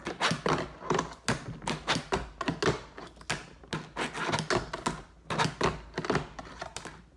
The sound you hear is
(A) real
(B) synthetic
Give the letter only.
A